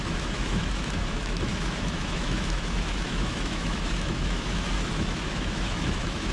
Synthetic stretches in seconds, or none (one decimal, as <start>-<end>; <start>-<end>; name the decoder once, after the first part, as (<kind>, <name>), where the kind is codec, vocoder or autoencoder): 0.0-6.3 (autoencoder, DAC-VAE)